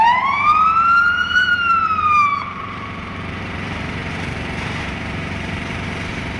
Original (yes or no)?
no